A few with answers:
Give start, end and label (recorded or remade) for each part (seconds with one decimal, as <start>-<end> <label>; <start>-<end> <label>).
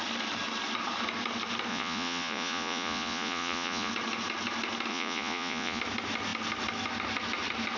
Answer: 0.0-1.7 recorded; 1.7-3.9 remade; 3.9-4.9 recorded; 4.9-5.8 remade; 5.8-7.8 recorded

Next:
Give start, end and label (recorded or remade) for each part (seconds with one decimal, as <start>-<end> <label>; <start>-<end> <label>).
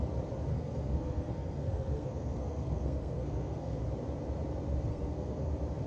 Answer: 0.0-0.5 recorded; 0.5-3.8 remade; 3.8-4.9 recorded; 4.9-5.5 remade; 5.5-5.9 recorded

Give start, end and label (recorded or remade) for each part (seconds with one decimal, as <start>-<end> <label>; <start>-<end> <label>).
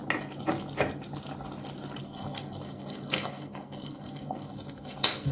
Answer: 0.0-2.0 recorded; 2.0-5.3 remade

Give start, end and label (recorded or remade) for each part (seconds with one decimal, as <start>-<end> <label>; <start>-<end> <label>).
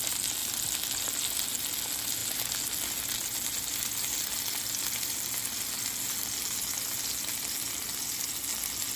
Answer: 0.0-9.0 recorded